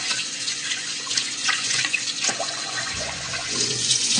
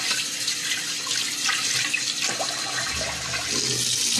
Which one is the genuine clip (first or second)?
second